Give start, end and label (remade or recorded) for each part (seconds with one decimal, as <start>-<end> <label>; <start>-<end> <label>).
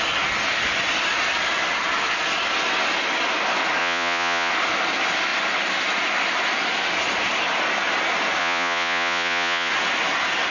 0.0-3.8 recorded; 3.8-4.5 remade; 4.5-8.4 recorded; 8.4-9.7 remade; 9.7-10.5 recorded